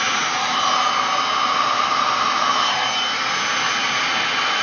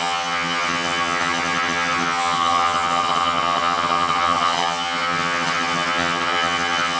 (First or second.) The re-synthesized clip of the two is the second